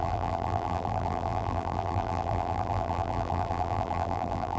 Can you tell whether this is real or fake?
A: fake